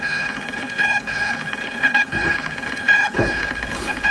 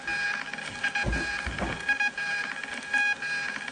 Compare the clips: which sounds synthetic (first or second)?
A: first